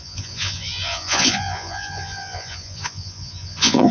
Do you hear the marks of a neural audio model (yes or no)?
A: yes